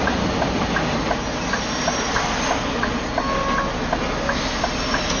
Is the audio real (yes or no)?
yes